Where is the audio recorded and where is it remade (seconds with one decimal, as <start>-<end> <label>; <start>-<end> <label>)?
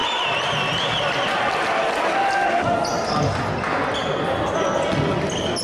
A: 0.0-5.6 recorded